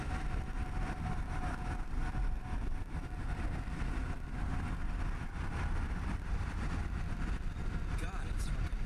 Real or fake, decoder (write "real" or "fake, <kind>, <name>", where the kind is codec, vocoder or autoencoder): fake, vocoder, BigVGAN v2